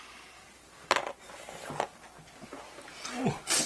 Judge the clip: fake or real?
real